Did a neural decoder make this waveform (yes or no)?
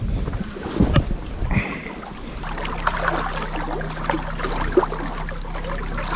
no